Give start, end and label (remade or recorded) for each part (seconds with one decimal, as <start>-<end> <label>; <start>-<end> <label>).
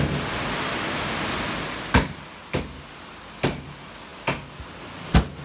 0.0-5.4 recorded